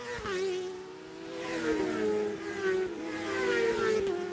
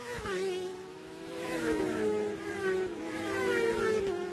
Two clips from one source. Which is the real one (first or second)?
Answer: first